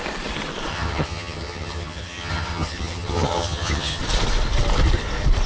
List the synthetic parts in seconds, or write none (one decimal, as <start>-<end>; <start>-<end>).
0.7-4.0

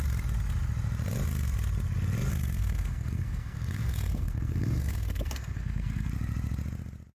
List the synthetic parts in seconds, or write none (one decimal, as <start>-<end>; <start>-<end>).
2.3-6.1

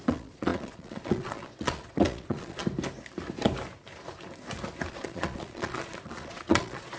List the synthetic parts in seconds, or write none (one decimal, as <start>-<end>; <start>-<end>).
0.0-2.6; 4.9-7.0

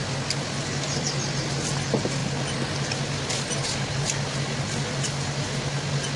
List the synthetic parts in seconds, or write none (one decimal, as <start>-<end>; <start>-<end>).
none

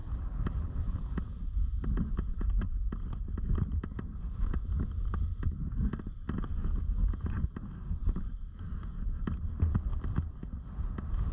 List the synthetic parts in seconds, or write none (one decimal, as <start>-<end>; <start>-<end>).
0.0-2.0; 9.9-10.7

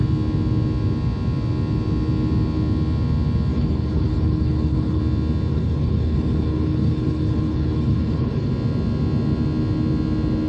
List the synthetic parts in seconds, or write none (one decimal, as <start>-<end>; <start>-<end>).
3.5-5.0; 5.5-8.5

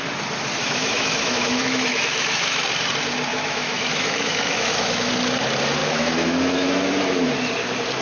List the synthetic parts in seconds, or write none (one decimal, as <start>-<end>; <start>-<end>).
0.6-2.6; 3.3-5.1; 5.8-6.9

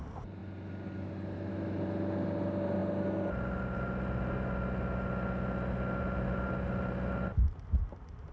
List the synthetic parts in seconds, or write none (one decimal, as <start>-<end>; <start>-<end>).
none